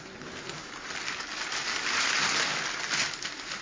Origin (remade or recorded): recorded